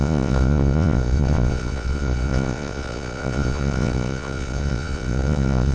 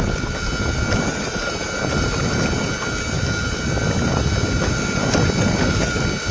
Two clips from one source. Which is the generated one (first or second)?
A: first